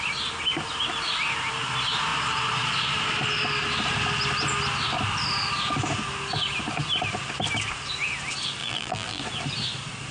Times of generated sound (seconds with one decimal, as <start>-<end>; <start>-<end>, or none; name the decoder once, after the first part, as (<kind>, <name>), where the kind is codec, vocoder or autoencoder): 8.6-9.2 (vocoder, BigVGAN v2)